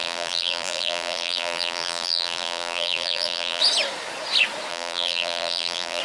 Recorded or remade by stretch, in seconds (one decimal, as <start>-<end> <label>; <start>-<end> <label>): 0.0-3.6 remade; 3.6-4.7 recorded; 4.7-6.0 remade

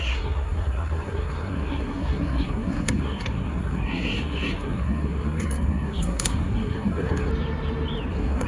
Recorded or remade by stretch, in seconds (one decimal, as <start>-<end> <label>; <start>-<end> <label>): 0.0-7.3 remade; 7.3-8.1 recorded; 8.1-8.5 remade

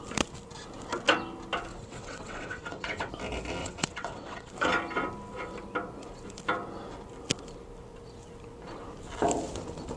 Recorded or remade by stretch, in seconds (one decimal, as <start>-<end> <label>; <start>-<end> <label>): 0.0-1.7 recorded; 1.7-3.1 remade; 3.1-3.6 recorded; 3.6-4.5 remade; 4.5-10.0 recorded

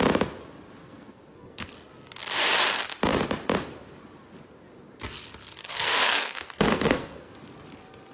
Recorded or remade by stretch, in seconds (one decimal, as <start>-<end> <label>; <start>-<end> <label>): 0.0-0.8 recorded; 0.8-1.7 remade; 1.7-5.6 recorded; 5.6-7.3 remade; 7.3-8.1 recorded

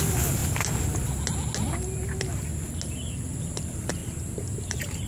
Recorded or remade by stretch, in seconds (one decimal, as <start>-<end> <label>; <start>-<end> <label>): 0.0-4.0 recorded; 4.0-5.1 remade

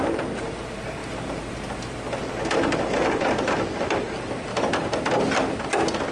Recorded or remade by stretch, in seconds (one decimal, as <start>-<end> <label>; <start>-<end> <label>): 0.0-1.0 recorded; 1.0-3.3 remade; 3.3-6.1 recorded